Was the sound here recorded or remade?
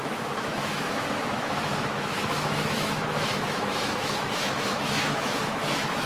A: remade